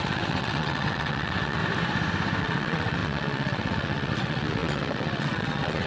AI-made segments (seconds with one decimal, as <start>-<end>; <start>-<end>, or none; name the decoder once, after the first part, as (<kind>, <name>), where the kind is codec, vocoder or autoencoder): 0.0-1.6 (vocoder, WaveNeXt); 2.4-5.9